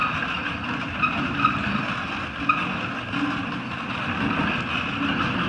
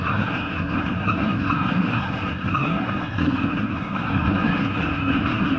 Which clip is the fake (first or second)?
second